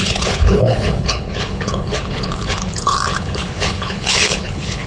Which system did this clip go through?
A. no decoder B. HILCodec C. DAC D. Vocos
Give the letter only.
B